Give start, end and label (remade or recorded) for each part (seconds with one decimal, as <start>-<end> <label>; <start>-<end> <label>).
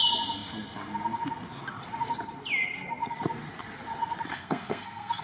0.0-4.3 recorded; 4.3-5.2 remade